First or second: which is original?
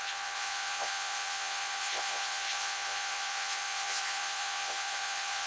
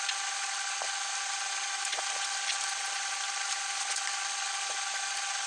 second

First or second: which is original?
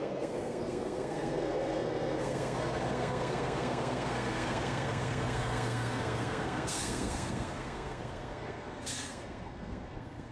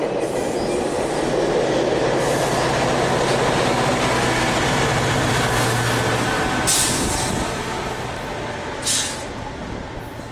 second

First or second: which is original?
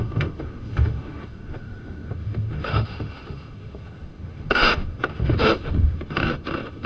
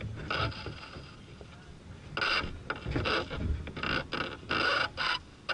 second